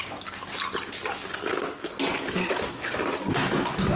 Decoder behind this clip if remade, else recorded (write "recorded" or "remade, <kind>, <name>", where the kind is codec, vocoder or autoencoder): recorded